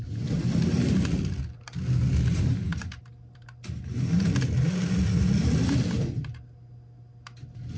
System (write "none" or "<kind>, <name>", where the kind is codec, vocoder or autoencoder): none